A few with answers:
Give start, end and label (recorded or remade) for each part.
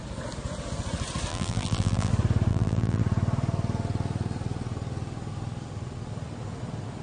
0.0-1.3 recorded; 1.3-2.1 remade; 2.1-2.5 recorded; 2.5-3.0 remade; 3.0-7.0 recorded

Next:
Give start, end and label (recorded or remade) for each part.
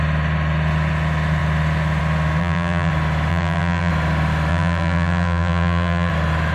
0.0-2.4 recorded; 2.4-2.9 remade; 2.9-3.3 recorded; 3.3-3.9 remade; 3.9-4.5 recorded; 4.5-6.1 remade; 6.1-6.5 recorded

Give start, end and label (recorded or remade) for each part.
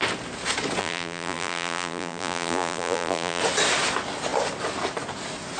0.0-0.8 recorded; 0.8-3.4 remade; 3.4-5.6 recorded